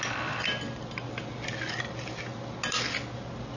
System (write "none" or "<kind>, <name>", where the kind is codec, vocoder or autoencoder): none